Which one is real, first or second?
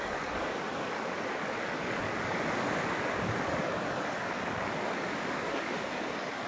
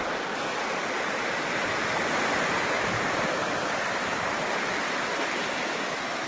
second